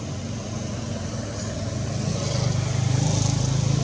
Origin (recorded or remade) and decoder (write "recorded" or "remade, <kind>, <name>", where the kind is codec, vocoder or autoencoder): recorded